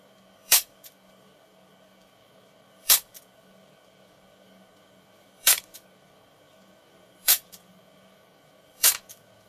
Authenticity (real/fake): fake